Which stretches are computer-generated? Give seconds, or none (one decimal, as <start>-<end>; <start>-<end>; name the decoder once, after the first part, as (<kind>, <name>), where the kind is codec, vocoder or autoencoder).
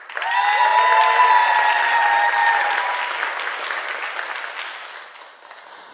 2.4-3.0 (vocoder, BigVGAN v2)